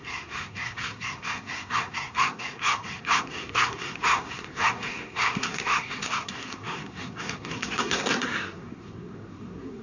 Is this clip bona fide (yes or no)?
no